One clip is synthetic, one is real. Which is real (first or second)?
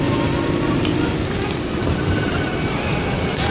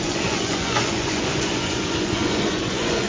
first